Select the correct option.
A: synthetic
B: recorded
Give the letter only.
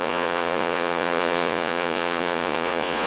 A